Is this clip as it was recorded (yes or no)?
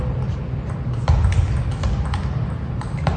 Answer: yes